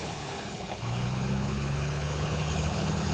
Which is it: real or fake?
fake